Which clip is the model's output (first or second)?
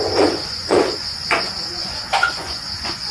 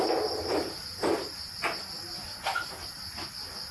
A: first